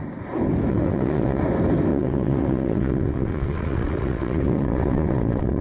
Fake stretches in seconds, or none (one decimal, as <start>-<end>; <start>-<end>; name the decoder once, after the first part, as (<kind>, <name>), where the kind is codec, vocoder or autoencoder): 0.7-1.4 (vocoder, WaveNeXt); 1.9-5.6